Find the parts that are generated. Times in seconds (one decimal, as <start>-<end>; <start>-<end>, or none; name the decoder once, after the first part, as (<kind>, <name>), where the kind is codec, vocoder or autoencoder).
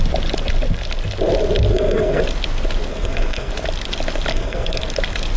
1.7-2.2 (codec, SNAC); 2.9-3.5; 4.3-4.8